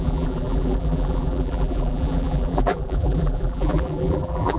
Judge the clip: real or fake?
fake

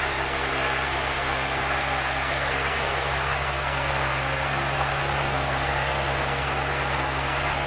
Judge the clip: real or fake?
fake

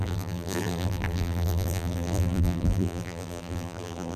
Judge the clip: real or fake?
fake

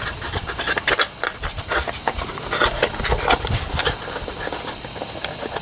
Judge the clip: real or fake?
real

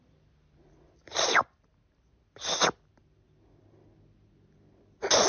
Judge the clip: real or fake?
real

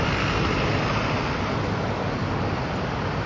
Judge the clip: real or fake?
real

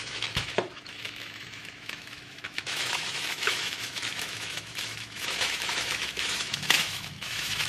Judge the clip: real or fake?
fake